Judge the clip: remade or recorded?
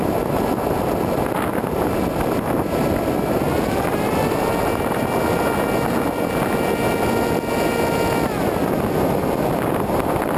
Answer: recorded